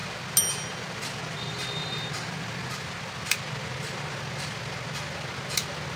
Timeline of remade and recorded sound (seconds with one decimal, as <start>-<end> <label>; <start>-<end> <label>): 0.0-6.0 recorded